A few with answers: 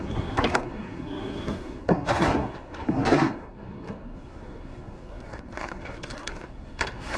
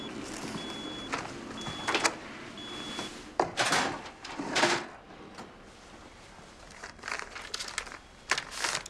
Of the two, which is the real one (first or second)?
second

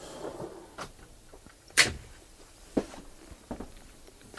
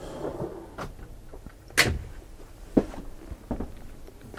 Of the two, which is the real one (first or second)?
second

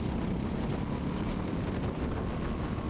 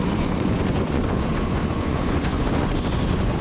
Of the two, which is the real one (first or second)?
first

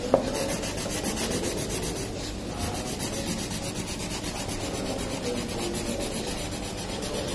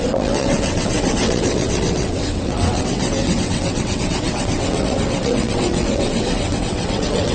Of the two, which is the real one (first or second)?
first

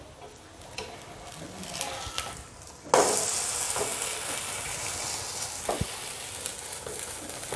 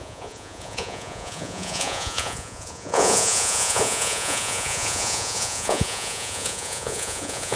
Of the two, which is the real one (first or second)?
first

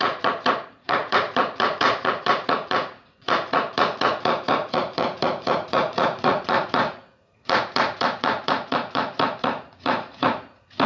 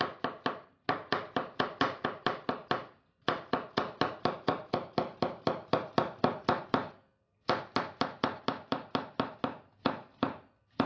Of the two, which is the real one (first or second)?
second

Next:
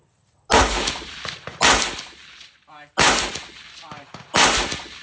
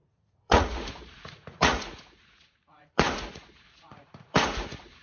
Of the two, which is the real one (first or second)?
first